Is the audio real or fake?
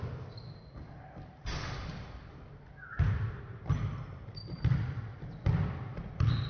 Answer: real